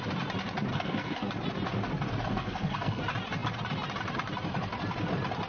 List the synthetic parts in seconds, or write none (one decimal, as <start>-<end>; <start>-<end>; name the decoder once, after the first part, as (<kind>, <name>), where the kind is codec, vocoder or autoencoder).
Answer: 0.7-1.3 (codec, SNAC); 2.3-3.0